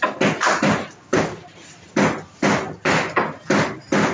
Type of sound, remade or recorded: recorded